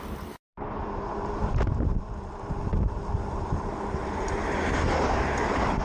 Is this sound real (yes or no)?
no